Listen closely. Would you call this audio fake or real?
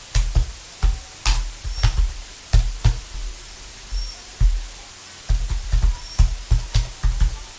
real